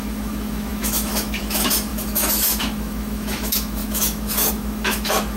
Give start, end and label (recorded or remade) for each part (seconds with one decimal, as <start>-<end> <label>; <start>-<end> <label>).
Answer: 0.0-5.4 remade